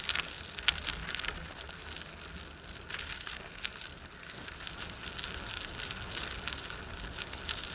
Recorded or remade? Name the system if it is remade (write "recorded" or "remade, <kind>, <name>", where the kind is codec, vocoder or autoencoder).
recorded